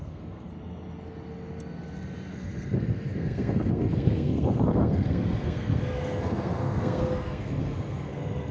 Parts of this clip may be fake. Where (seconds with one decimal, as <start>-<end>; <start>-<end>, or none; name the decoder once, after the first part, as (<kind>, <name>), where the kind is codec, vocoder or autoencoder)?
0.0-0.5 (codec, SNAC); 2.3-8.5